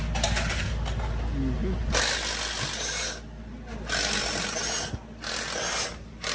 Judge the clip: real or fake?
real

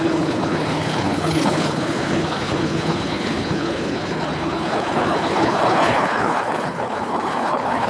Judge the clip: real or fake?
fake